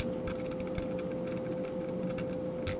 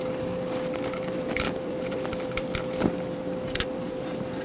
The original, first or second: first